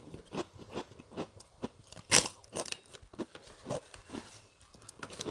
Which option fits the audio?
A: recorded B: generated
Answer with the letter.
B